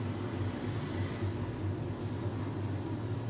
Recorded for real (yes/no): yes